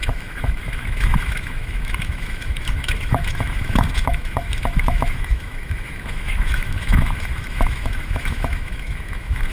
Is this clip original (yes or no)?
no